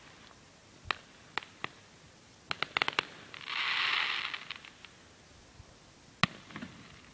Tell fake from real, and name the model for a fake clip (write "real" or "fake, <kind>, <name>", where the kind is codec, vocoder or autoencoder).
real